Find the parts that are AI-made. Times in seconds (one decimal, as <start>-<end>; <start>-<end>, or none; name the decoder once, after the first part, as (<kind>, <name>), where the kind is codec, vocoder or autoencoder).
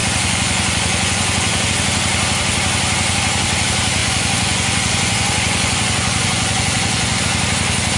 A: 0.0-1.7 (vocoder, Vocos); 4.0-7.2